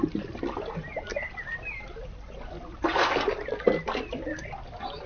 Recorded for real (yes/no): yes